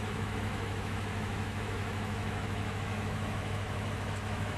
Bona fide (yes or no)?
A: no